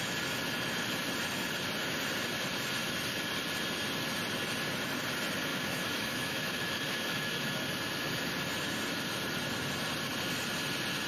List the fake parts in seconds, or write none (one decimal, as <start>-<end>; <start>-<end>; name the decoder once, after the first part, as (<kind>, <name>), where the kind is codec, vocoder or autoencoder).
5.5-7.5 (autoencoder, DAC-VAE)

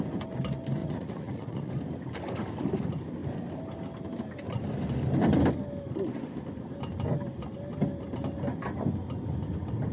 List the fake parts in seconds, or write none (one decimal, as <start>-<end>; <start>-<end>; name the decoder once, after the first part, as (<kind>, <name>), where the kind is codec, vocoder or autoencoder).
0.8-1.7 (vocoder, Vocos)

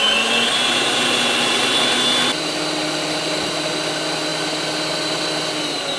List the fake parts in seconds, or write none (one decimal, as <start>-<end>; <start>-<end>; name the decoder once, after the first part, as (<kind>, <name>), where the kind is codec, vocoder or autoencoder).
none

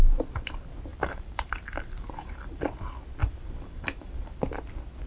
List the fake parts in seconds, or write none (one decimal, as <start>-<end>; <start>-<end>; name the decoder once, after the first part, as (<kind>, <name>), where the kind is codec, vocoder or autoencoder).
0.9-2.6 (vocoder, BigVGAN v2); 3.2-4.4